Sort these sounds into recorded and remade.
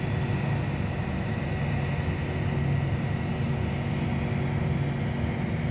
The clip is recorded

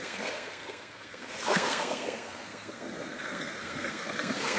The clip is remade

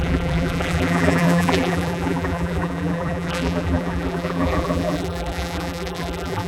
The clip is remade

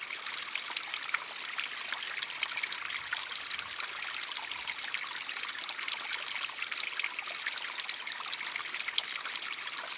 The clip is recorded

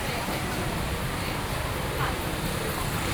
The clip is remade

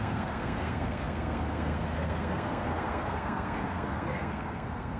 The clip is remade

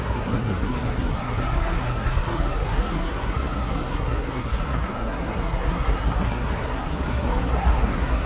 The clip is remade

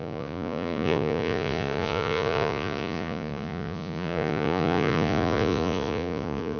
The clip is remade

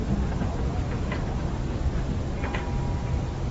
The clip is recorded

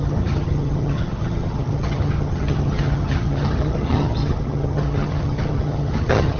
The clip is remade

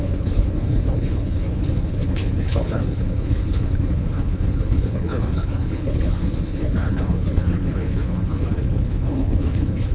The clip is remade